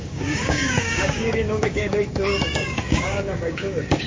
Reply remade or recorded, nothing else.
remade